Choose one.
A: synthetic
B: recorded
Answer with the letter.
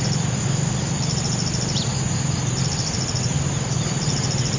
B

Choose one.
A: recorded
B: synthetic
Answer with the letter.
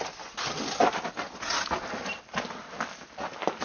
A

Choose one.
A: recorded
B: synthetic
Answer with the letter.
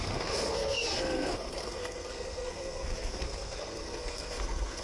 B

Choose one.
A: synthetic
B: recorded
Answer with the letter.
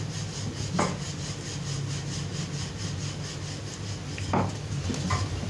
B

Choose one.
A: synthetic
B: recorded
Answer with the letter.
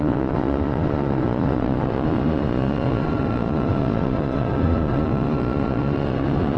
A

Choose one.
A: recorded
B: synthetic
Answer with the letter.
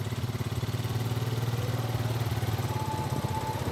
A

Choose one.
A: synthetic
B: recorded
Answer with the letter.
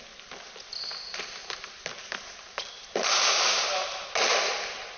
B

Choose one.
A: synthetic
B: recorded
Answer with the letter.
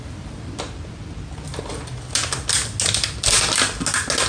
B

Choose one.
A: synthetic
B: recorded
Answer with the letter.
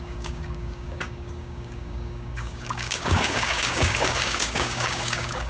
A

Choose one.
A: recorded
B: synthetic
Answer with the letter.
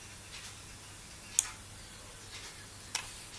A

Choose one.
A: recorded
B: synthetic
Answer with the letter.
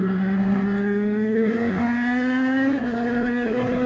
B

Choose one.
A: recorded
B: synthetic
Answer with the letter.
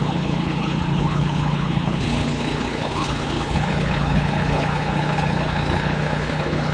B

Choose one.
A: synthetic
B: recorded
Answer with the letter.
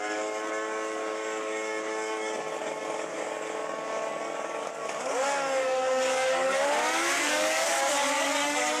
A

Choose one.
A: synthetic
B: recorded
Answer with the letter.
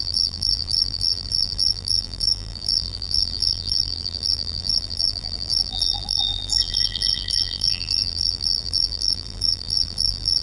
A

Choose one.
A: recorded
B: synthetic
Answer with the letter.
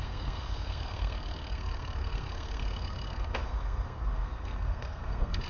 B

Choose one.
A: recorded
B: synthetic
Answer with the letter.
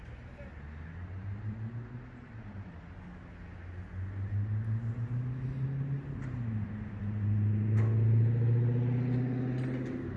A